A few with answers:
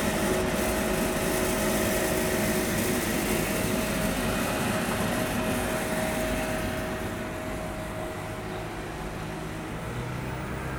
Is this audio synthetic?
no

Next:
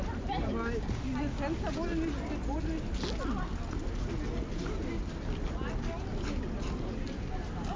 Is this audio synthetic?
no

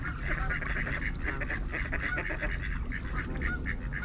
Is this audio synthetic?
no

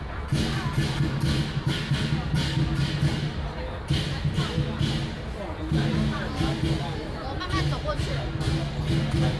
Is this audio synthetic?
no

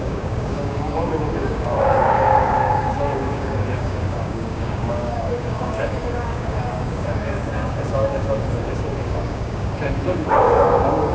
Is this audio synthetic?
yes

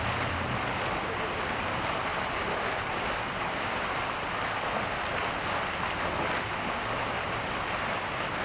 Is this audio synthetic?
no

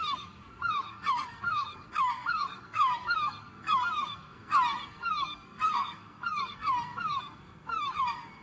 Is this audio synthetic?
yes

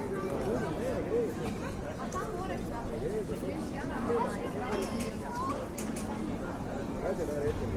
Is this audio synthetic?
no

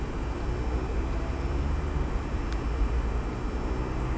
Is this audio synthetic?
no